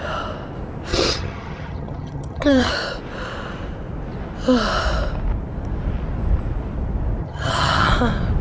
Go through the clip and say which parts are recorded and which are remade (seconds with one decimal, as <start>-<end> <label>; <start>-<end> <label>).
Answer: 0.0-0.9 recorded; 0.9-2.7 remade; 2.7-7.2 recorded; 7.2-7.9 remade; 7.9-8.4 recorded